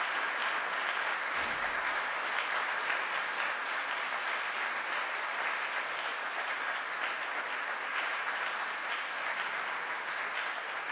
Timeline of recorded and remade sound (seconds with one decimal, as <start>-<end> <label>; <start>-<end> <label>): 0.0-0.8 recorded; 0.8-2.3 remade; 2.3-6.1 recorded; 6.1-6.6 remade; 6.6-7.9 recorded; 7.9-9.5 remade; 9.5-10.9 recorded